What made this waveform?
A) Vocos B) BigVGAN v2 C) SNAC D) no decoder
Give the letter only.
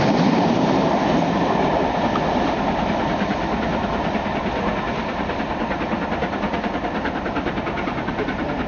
B